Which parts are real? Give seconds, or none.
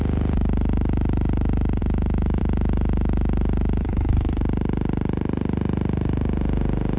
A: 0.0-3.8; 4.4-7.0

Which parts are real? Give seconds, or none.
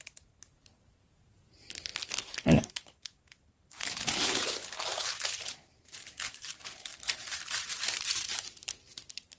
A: 1.9-2.7; 4.6-5.8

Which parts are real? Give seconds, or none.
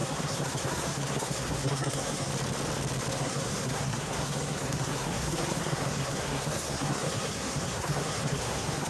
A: 2.3-3.1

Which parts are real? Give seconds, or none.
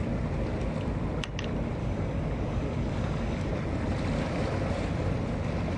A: 0.0-1.8; 3.5-5.8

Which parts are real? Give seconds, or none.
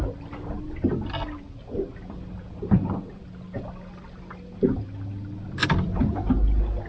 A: 0.0-5.6; 6.3-6.9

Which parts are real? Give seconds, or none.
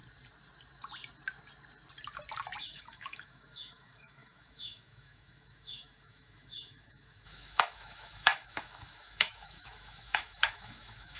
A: 0.0-2.6